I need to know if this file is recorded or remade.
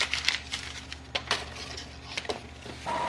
recorded